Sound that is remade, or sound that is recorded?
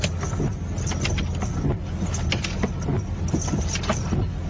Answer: recorded